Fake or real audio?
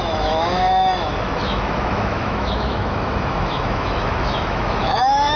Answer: fake